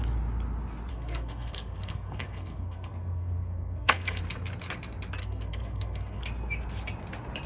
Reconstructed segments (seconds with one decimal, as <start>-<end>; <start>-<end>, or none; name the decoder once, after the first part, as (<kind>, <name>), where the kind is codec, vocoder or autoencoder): 0.9-4.2 (codec, SNAC); 5.2-6.2